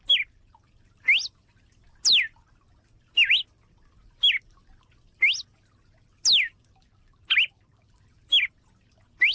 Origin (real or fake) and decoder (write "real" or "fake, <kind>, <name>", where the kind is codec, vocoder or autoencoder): real